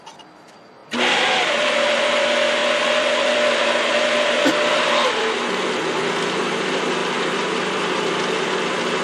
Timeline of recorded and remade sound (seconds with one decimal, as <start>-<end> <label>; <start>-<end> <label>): 0.0-0.8 recorded; 0.8-2.0 remade; 2.0-2.6 recorded; 2.6-5.2 remade; 5.2-7.0 recorded; 7.0-8.0 remade; 8.0-9.0 recorded